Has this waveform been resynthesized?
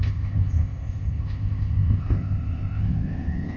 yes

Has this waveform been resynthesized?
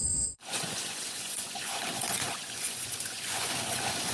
yes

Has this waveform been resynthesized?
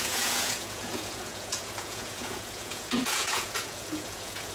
yes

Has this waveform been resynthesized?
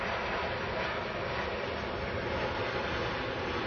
no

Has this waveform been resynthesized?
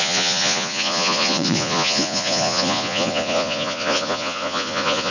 yes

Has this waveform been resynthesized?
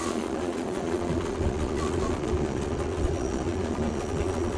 yes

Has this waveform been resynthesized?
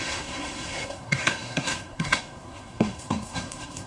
yes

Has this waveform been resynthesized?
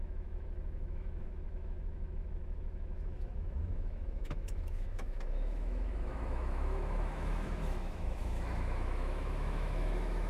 yes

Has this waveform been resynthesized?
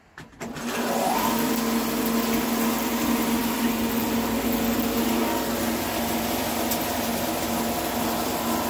no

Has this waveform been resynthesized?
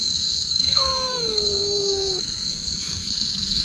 yes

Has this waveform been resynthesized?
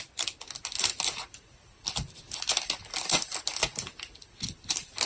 no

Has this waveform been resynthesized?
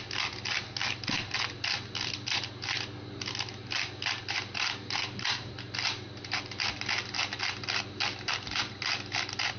no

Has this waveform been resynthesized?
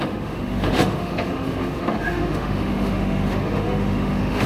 yes